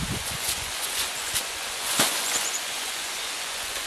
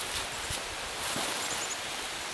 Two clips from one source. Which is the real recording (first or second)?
second